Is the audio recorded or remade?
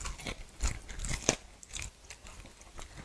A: recorded